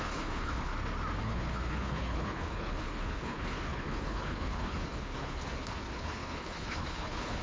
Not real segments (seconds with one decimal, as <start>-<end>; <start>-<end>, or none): 0.0-0.7; 1.2-7.4